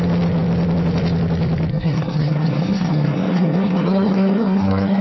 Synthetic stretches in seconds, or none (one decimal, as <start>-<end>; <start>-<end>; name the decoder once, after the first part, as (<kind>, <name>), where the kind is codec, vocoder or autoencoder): 1.7-5.0 (codec, SNAC)